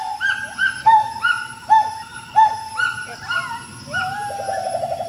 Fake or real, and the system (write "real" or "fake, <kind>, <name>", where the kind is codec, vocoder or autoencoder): real